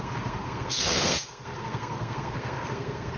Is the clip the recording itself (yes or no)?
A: no